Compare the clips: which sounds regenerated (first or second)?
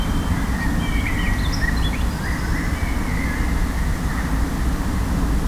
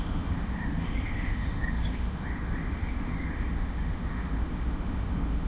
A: second